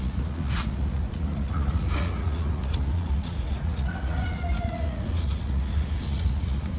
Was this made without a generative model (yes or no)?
no